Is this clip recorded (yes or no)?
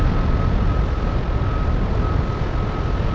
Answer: yes